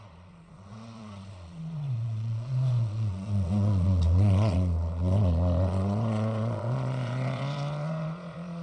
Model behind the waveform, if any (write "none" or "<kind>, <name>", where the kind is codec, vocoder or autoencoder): vocoder, Vocos